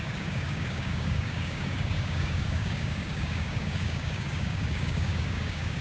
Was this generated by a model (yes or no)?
yes